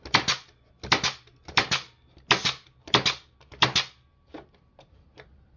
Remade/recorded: recorded